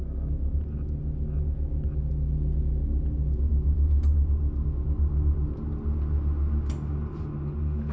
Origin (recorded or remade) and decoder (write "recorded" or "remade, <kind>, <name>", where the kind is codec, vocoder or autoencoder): recorded